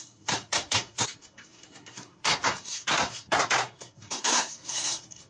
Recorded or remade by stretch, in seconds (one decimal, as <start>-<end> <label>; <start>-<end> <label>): 0.0-5.3 remade